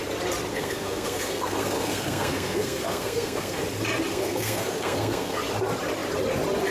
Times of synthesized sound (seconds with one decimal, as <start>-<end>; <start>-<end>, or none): 0.5-3.6; 4.1-5.4